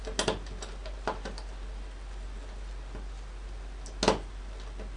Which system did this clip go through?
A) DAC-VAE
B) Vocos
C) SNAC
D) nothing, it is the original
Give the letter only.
D